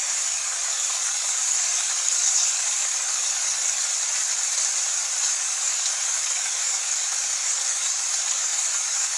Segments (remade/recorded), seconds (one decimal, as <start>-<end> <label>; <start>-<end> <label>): 0.0-3.9 remade; 3.9-5.2 recorded; 5.2-9.2 remade